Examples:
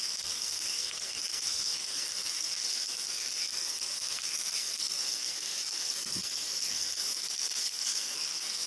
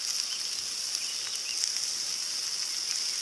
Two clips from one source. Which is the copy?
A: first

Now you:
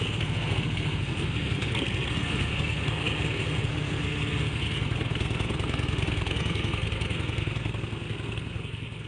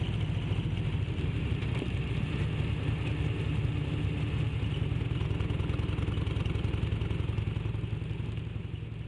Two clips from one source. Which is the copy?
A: first